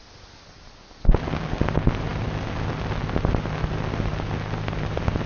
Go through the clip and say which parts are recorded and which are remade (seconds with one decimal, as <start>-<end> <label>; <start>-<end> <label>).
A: 0.0-5.3 recorded